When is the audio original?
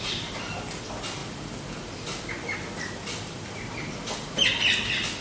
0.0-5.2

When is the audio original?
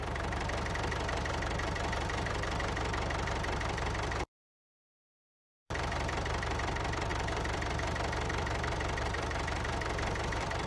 none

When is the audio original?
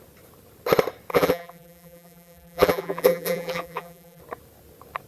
0.0-1.1; 4.2-5.1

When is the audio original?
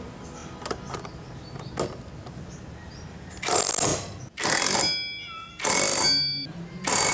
0.0-7.1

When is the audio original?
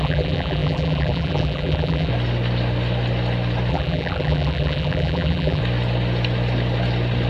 2.1-3.7; 5.6-7.3